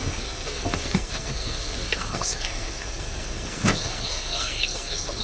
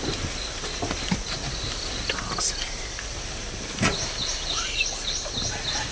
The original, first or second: second